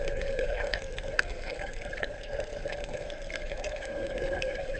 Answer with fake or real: fake